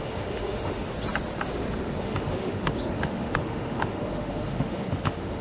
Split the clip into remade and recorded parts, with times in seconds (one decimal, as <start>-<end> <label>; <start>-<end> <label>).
0.0-0.9 remade; 0.9-2.0 recorded; 2.0-5.4 remade